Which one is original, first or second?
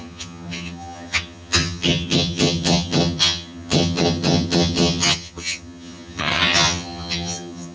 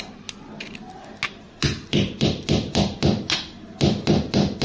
second